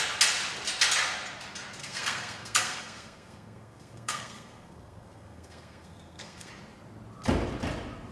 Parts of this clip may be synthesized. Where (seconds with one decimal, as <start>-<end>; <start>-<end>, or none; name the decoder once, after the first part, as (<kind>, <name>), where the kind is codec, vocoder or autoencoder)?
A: 1.8-6.5 (codec, SNAC)